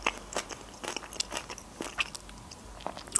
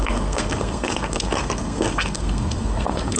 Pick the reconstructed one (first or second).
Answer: second